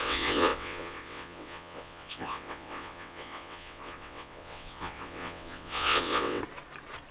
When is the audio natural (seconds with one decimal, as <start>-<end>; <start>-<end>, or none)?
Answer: 6.4-7.1